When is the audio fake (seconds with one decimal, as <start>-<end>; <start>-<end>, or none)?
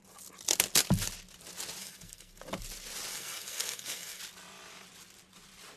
1.8-2.4; 3.1-4.2